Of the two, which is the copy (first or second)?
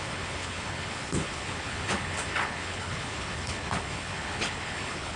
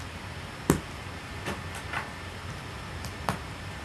first